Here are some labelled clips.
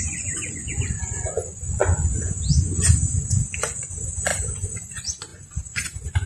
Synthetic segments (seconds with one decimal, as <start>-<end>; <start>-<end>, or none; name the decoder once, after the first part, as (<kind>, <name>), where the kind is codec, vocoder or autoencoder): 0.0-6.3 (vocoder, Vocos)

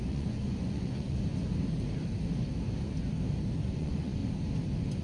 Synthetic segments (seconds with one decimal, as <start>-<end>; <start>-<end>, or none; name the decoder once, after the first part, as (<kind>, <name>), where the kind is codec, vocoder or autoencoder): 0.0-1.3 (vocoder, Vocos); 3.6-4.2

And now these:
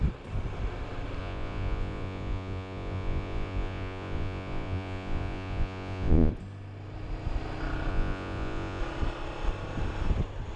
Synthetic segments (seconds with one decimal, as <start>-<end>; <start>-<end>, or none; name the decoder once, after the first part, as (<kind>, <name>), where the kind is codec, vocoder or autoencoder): 1.2-6.3 (vocoder, Vocos); 7.9-8.8

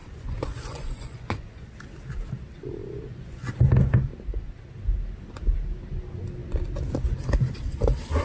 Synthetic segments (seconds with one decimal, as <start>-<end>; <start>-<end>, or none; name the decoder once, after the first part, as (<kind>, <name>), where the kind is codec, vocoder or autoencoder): 0.0-1.7 (vocoder, Vocos); 2.8-3.5

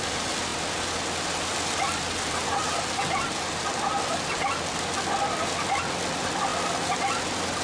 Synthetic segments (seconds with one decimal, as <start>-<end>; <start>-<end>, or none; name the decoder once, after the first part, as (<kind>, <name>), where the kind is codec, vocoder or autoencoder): none

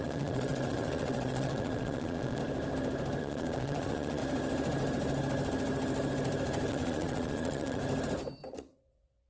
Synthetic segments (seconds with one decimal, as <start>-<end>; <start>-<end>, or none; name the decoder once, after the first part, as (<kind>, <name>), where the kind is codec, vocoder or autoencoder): 0.0-2.4 (vocoder, Vocos); 3.2-4.2; 6.7-7.8; 8.5-9.3

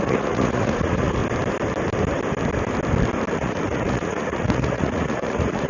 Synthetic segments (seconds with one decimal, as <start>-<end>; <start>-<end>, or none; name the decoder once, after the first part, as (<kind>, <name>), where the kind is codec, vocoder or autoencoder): 0.0-1.2 (vocoder, Vocos); 3.3-5.7

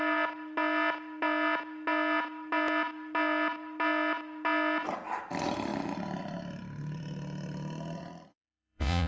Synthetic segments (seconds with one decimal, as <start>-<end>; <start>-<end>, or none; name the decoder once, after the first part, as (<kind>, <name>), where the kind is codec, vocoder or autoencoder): 8.3-9.1 (vocoder, Vocos)